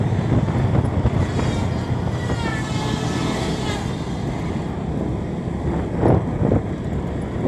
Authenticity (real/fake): real